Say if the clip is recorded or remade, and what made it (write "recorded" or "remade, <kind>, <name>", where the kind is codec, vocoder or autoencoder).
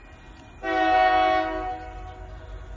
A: recorded